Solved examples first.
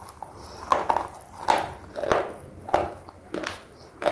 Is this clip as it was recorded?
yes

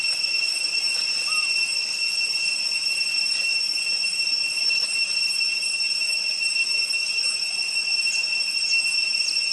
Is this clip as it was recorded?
yes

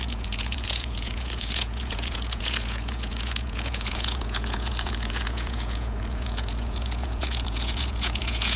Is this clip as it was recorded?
no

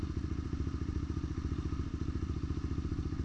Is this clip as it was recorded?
yes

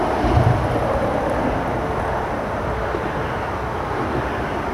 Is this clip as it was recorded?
yes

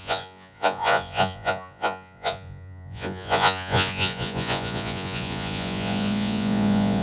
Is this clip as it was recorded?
no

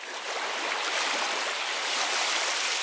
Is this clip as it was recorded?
yes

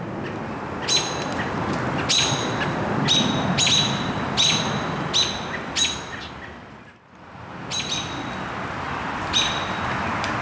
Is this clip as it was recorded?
yes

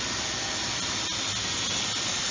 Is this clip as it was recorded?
yes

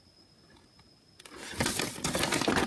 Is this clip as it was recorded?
yes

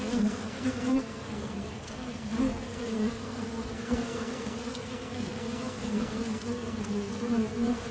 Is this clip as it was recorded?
no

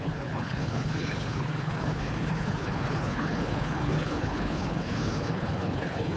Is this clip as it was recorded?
no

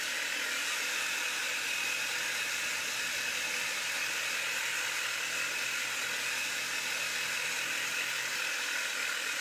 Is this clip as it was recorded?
yes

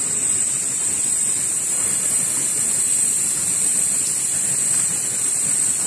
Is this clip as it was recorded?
yes